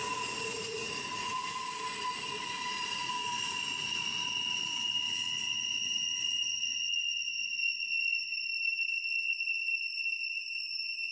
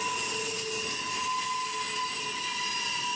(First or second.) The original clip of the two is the second